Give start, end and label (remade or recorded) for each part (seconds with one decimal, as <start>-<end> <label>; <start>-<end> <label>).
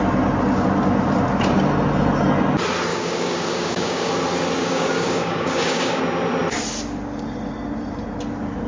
0.0-2.9 recorded; 2.9-4.1 remade; 4.1-4.6 recorded; 4.6-6.0 remade; 6.0-8.7 recorded